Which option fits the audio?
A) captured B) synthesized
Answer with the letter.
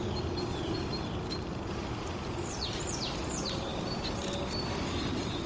A